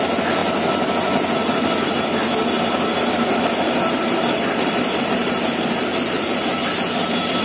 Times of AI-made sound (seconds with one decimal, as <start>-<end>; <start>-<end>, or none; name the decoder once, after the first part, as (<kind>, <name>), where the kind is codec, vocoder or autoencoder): 0.0-0.4 (vocoder, BigVGAN v2); 3.1-5.9